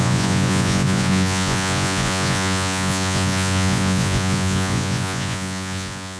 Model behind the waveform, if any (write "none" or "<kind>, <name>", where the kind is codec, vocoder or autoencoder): vocoder, Vocos